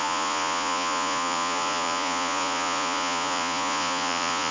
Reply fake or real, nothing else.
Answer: fake